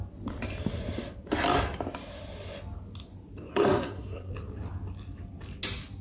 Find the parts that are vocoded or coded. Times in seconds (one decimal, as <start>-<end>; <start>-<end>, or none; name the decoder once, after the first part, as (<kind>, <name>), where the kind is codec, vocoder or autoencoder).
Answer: 3.5-4.3 (codec, SNAC)